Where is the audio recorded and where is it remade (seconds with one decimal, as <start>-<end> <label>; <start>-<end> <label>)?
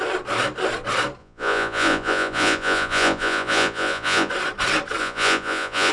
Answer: 0.0-1.2 recorded; 1.2-4.3 remade; 4.3-5.0 recorded; 5.0-5.9 remade